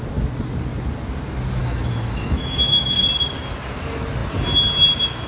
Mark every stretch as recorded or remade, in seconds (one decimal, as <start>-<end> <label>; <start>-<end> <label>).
0.0-1.6 recorded; 1.6-3.0 remade; 3.0-5.3 recorded